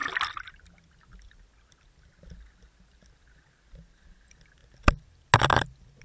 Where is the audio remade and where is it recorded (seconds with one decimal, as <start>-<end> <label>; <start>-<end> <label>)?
0.0-6.0 recorded